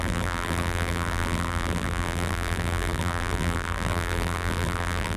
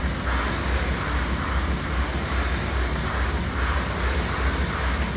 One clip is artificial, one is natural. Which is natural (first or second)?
second